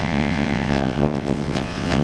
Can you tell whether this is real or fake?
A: fake